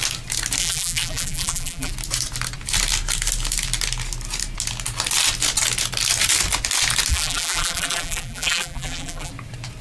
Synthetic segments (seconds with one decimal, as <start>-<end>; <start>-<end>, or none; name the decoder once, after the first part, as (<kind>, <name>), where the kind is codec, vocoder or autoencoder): 0.6-1.9 (vocoder, BigVGAN v2); 7.1-9.3

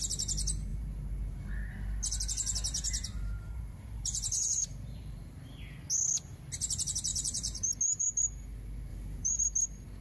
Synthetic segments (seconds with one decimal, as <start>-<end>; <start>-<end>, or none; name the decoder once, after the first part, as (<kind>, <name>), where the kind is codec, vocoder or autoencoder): 0.7-1.5 (vocoder, BigVGAN v2); 2.7-5.6; 7.1-7.7; 8.9-9.4

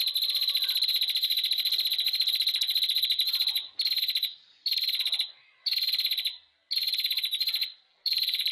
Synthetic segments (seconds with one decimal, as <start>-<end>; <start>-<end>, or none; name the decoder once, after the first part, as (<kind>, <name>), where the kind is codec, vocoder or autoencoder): 7.9-8.5 (vocoder, BigVGAN v2)

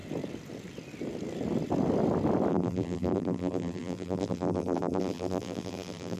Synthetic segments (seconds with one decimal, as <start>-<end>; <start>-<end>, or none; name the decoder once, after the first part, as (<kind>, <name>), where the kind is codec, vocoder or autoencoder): 2.5-6.2 (vocoder, BigVGAN v2)

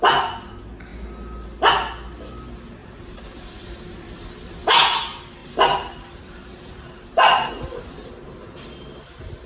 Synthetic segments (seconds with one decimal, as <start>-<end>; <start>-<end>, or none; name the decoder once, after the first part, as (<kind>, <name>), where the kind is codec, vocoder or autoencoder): 2.8-3.8 (vocoder, BigVGAN v2); 5.4-7.5

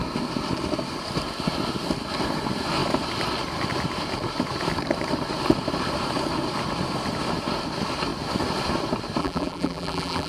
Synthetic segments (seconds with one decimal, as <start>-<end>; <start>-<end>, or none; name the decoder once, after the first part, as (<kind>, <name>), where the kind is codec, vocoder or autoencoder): 9.2-10.3 (vocoder, BigVGAN v2)

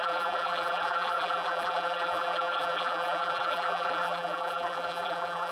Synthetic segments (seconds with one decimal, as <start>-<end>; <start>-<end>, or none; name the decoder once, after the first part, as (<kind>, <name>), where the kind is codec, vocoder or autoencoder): 0.0-5.5 (vocoder, BigVGAN v2)

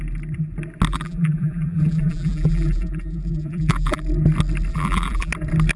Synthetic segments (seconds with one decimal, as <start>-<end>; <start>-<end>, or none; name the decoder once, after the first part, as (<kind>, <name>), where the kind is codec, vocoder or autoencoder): 0.9-4.0 (vocoder, BigVGAN v2); 4.7-5.3